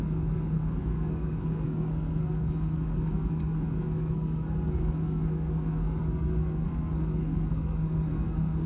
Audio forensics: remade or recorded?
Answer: remade